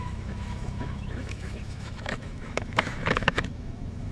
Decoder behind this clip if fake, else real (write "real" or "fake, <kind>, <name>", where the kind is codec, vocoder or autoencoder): fake, autoencoder, DAC-VAE